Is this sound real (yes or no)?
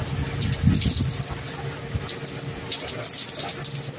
yes